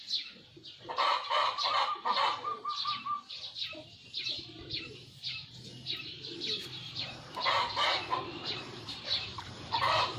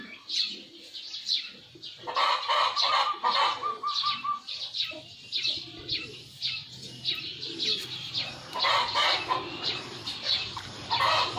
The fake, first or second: first